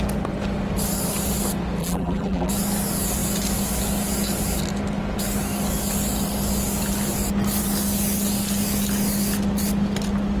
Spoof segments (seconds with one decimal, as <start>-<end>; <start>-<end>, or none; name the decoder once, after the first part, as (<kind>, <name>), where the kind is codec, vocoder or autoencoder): 1.8-2.5 (vocoder, BigVGAN v2)